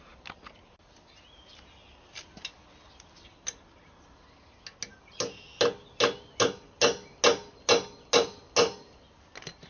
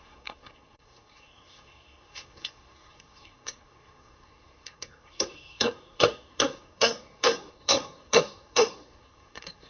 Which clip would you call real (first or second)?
first